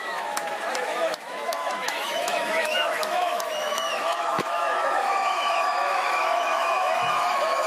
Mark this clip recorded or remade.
remade